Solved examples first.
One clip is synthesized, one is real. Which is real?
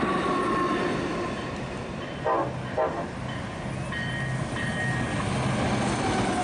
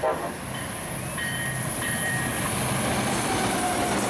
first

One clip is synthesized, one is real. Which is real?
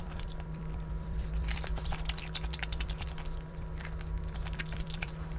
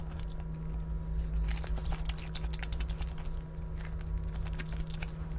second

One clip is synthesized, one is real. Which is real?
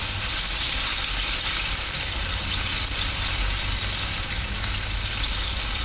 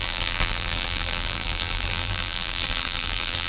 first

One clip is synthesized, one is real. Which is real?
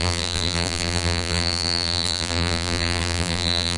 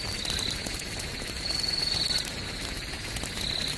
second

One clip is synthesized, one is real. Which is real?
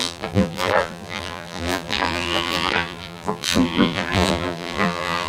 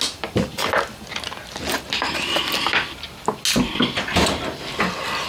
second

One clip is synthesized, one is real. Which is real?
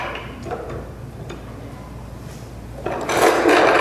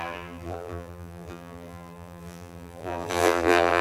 first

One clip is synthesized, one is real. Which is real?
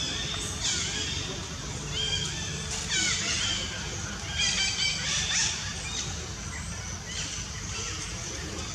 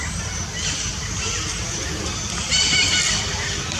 first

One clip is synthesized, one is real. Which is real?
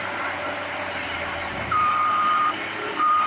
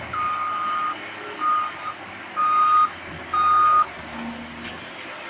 second